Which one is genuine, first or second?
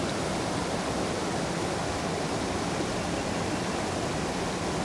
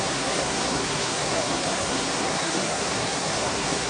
first